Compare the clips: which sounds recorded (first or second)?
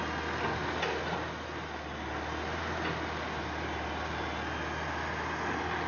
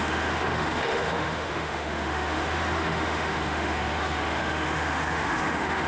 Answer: first